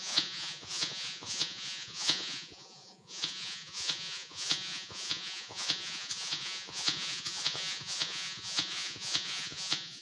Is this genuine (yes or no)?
no